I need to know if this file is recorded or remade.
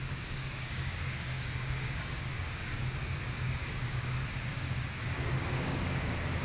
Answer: remade